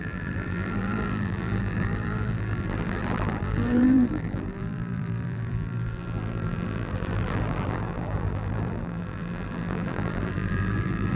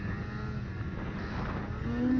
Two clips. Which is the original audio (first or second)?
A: second